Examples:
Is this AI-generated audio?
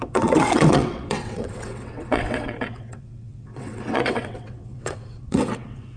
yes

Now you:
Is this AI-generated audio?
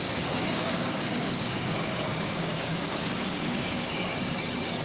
yes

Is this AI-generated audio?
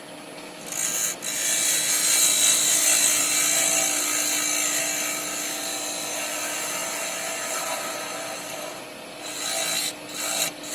no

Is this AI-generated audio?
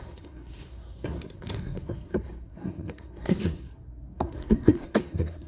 yes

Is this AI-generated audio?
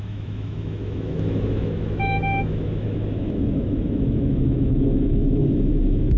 yes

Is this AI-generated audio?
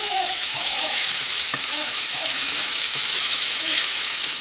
yes